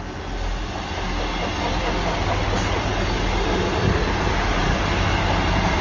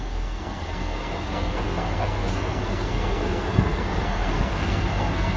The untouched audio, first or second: first